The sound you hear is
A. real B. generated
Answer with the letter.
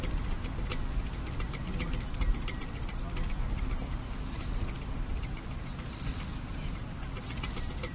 A